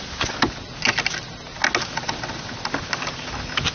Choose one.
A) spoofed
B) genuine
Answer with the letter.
B